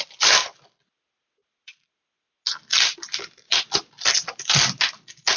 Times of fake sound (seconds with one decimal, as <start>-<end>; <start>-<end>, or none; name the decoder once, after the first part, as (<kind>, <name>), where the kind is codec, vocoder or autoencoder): none